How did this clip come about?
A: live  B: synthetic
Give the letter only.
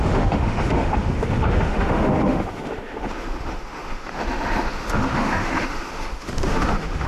B